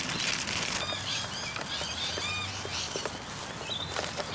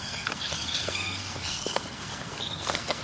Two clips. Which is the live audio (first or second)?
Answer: first